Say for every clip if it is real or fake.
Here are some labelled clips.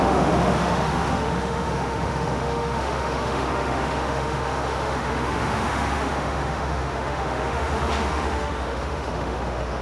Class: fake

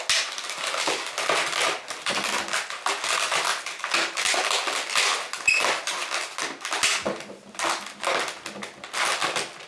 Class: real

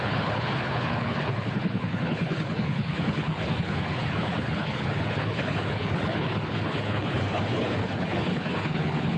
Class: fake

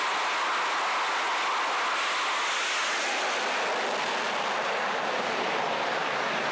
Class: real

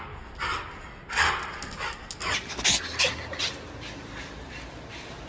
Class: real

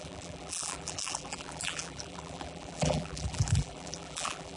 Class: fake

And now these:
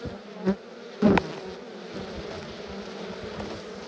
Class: real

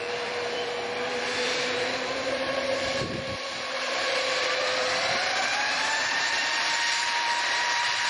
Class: fake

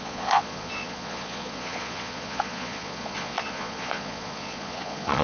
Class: fake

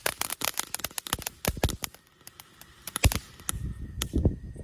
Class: real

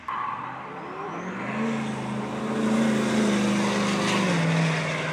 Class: real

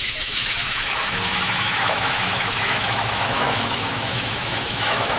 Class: fake